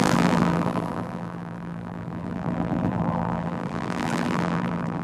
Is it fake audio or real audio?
fake